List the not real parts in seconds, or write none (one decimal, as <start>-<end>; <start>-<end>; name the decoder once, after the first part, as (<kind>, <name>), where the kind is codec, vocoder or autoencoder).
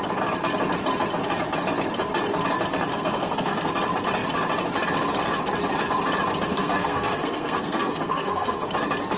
2.9-3.7 (codec, SNAC); 6.5-8.7